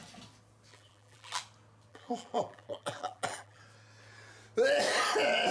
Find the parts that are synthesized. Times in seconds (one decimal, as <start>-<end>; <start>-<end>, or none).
0.7-1.4; 1.9-3.6

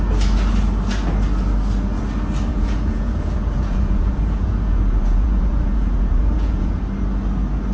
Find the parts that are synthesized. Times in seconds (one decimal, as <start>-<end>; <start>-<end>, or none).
2.5-6.8

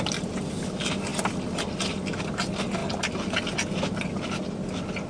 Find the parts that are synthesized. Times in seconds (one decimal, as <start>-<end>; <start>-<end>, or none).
0.0-2.8; 3.8-5.1

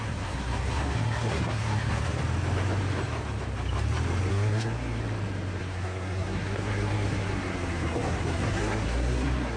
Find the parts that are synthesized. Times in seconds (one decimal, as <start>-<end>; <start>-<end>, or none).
0.0-2.2; 4.3-5.0; 5.6-9.6

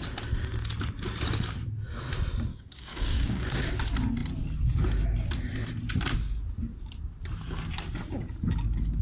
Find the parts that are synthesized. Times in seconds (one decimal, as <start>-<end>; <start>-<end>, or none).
2.5-3.7

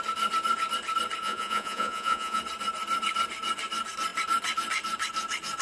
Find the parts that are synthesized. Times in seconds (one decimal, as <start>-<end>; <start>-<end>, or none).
1.2-2.4